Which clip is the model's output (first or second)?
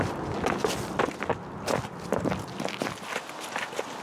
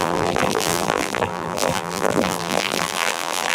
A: second